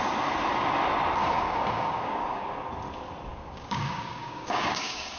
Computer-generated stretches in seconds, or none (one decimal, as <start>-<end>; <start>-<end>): 1.2-2.7; 3.3-5.2